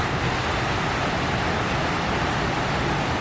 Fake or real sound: real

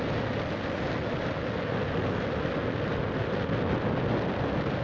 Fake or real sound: real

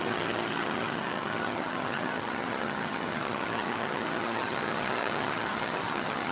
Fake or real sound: fake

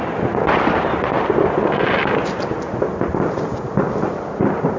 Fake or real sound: real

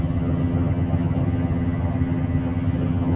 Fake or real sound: fake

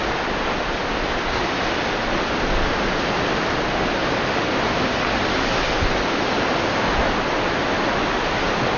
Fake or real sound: real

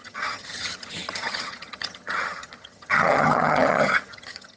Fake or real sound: fake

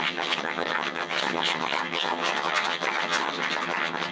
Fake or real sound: fake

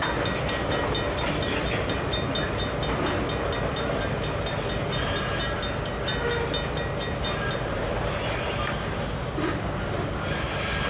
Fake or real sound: real